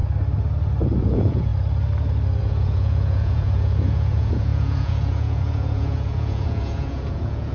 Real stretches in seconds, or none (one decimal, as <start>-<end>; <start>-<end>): 0.0-1.0; 1.5-2.4